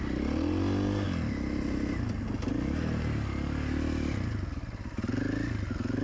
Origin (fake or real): real